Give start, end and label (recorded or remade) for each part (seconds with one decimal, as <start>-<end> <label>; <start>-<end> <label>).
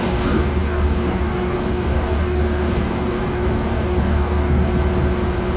0.0-4.7 remade; 4.7-5.6 recorded